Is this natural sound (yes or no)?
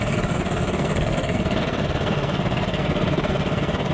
no